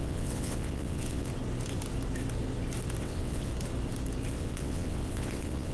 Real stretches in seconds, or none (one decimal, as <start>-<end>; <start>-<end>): 1.3-3.0; 3.5-4.3